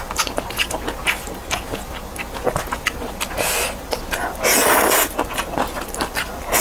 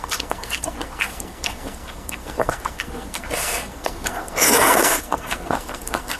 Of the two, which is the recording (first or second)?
first